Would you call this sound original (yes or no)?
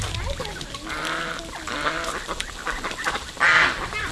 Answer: yes